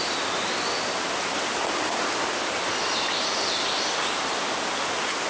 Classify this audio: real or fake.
real